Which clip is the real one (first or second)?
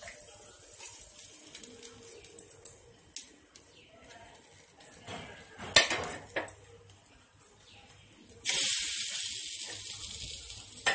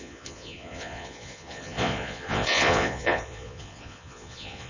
first